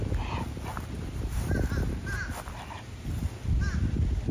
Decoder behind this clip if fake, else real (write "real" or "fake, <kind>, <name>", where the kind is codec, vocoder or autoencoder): real